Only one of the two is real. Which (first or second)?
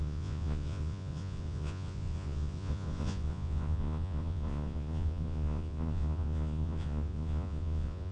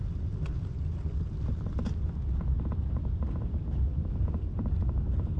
second